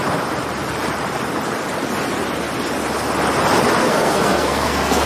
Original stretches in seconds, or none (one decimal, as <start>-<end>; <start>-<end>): 0.0-3.8